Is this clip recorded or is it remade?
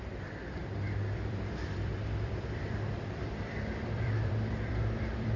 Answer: remade